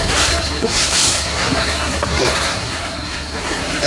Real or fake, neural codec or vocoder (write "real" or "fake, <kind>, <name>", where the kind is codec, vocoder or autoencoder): fake, codec, SNAC